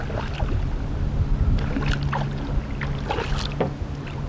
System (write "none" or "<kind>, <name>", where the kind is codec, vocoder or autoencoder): none